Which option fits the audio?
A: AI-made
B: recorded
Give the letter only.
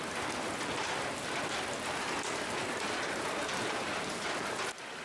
B